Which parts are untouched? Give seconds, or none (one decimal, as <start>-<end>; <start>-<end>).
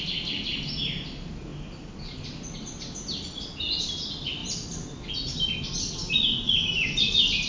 0.0-7.5